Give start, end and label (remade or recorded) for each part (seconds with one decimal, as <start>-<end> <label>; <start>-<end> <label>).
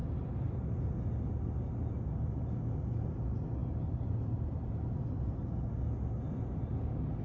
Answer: 0.0-0.9 remade; 0.9-3.6 recorded; 3.6-5.0 remade; 5.0-7.2 recorded